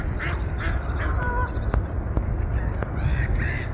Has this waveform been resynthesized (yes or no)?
no